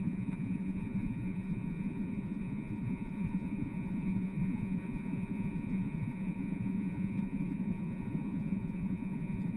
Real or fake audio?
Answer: fake